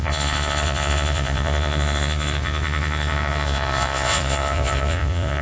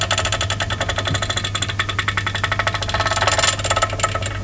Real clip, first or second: second